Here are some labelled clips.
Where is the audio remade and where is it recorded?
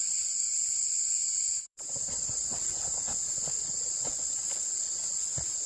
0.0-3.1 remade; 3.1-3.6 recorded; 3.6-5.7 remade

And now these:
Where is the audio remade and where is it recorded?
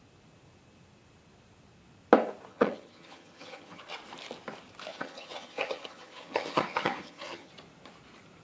0.0-2.5 recorded; 2.5-3.8 remade; 3.8-4.9 recorded; 4.9-7.5 remade; 7.5-8.4 recorded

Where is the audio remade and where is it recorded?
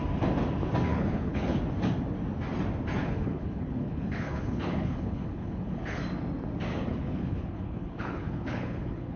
0.0-0.9 recorded; 0.9-1.6 remade; 1.6-3.0 recorded; 3.0-6.0 remade; 6.0-6.7 recorded; 6.7-9.2 remade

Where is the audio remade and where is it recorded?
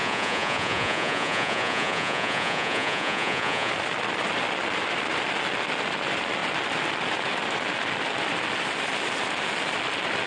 0.0-3.7 remade; 3.7-10.3 recorded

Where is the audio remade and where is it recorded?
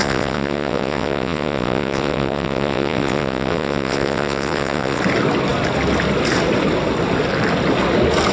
0.0-5.0 remade; 5.0-8.3 recorded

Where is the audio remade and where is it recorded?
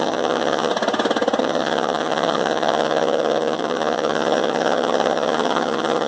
0.0-0.7 remade; 0.7-1.4 recorded; 1.4-6.1 remade